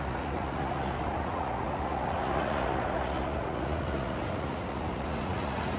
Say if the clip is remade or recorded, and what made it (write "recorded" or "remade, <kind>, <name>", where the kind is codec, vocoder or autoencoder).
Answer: remade, vocoder, Vocos